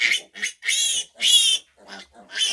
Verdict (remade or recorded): recorded